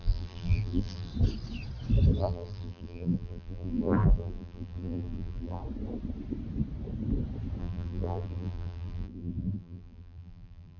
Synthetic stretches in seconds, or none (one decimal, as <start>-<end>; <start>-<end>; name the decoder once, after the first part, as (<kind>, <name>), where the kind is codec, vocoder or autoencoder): 0.0-1.1 (vocoder, BigVGAN v2); 2.2-5.6; 7.6-10.8